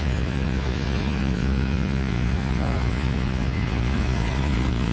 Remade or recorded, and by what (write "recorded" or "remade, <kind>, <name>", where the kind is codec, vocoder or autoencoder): remade, vocoder, Vocos